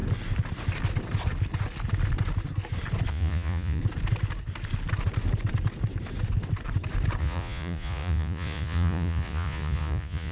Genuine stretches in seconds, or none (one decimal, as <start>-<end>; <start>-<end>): 0.0-3.1; 3.8-7.2